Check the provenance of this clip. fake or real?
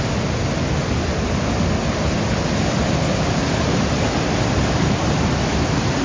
real